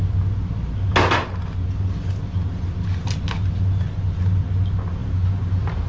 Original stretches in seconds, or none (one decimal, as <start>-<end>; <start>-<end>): 0.0-5.0